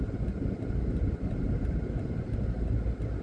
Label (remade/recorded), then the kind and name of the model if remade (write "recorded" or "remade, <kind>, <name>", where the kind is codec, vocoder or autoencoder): recorded